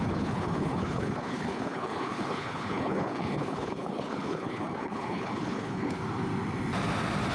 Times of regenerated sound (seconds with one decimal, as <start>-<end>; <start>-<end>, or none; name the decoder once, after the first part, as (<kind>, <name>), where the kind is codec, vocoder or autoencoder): 0.0-6.0 (codec, HILCodec)

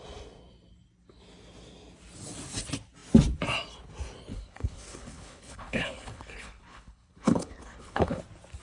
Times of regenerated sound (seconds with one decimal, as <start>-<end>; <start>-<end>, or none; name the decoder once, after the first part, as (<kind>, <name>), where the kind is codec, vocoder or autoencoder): 4.3-8.2 (codec, HILCodec)

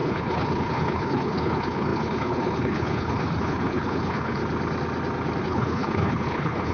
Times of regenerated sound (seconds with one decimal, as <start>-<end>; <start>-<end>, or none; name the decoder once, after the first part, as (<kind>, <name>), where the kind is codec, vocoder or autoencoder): 0.0-4.4 (codec, HILCodec); 5.4-6.7

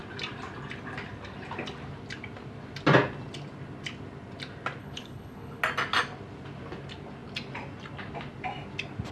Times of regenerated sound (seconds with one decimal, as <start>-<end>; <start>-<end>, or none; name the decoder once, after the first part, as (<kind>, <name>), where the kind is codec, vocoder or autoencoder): 4.8-5.6 (codec, HILCodec)

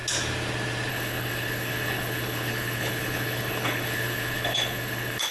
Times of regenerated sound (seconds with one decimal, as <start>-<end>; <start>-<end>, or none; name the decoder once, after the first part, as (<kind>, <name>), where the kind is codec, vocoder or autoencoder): 0.9-5.3 (codec, HILCodec)